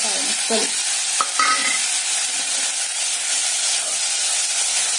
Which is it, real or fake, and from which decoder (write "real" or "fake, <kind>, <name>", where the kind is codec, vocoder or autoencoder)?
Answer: real